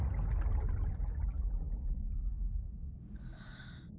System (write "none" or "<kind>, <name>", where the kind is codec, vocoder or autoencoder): none